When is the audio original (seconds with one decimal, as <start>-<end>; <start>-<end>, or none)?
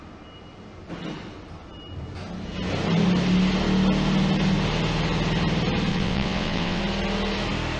0.0-5.9; 6.8-7.8